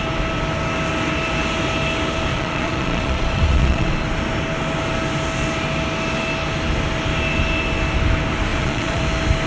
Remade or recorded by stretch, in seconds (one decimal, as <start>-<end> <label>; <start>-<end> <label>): 0.0-2.3 recorded; 2.3-3.9 remade; 3.9-8.5 recorded; 8.5-9.0 remade; 9.0-9.5 recorded